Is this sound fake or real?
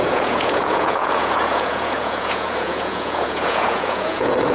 fake